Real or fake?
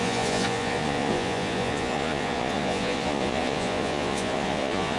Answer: fake